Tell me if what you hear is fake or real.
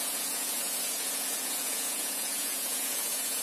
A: fake